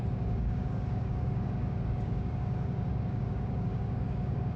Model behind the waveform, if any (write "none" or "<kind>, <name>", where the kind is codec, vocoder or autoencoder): codec, DAC